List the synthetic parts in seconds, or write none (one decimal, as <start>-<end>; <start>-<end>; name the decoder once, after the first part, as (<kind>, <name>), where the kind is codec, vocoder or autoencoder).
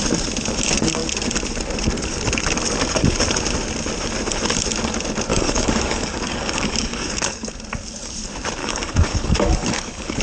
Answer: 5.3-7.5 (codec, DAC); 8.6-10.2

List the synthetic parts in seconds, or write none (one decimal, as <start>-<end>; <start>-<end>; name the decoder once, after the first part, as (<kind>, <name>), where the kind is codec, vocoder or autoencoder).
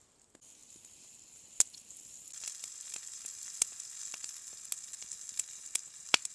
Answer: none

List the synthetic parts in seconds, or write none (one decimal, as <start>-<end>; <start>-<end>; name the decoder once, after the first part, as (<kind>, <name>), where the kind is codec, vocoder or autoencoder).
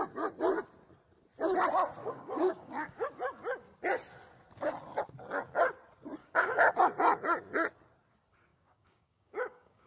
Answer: 2.0-3.1 (codec, DAC); 6.2-6.7; 8.5-9.9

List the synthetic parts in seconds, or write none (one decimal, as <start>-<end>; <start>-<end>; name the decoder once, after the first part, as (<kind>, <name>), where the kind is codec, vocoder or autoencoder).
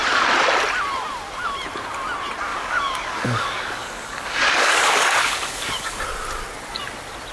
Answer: 2.5-6.0 (codec, DAC)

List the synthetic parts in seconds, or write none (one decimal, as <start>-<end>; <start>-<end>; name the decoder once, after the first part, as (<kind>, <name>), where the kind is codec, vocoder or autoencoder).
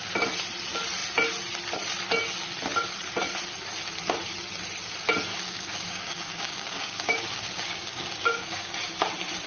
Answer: 5.3-8.7 (codec, DAC)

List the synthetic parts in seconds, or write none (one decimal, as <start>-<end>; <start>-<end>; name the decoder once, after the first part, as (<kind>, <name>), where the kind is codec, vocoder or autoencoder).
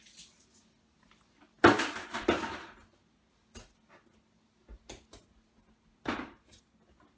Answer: none